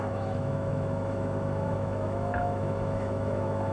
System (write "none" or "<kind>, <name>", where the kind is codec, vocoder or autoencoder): autoencoder, DAC-VAE